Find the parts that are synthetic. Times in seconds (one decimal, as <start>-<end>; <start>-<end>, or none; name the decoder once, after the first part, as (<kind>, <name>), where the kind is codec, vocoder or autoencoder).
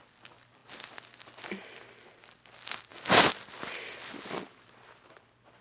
none